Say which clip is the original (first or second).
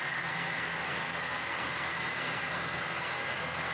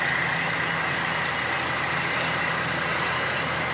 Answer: second